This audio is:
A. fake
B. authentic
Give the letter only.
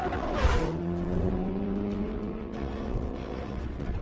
A